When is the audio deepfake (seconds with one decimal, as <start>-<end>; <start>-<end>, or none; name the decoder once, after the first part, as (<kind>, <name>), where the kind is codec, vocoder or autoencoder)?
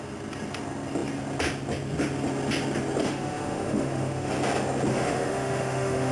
3.0-4.3 (autoencoder, DAC-VAE); 4.9-6.1